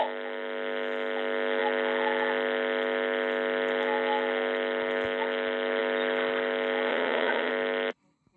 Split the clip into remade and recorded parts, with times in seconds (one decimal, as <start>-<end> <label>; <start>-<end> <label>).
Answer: 0.0-6.9 recorded; 6.9-7.5 remade; 7.5-8.4 recorded